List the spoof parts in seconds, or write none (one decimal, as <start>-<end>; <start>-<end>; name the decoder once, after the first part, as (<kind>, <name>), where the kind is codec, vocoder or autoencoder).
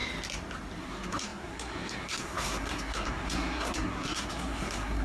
0.8-5.0 (codec, SNAC)